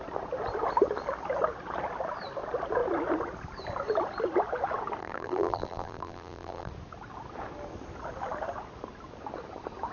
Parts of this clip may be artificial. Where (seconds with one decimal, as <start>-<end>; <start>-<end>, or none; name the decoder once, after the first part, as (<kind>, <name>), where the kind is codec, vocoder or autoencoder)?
5.0-6.7 (vocoder, BigVGAN v2)